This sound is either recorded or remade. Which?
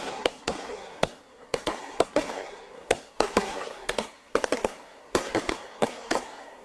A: remade